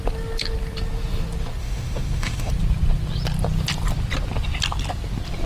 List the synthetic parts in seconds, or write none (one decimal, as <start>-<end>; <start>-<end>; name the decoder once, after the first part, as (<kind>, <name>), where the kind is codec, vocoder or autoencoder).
1.6-2.5 (autoencoder, DAC-VAE)